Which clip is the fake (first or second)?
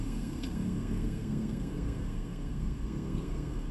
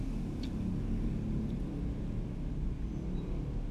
first